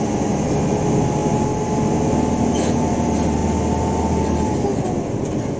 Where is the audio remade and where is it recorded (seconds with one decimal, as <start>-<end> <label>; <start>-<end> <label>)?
0.0-5.6 recorded